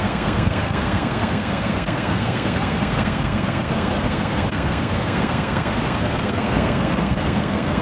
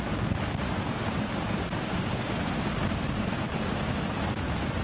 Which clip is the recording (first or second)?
second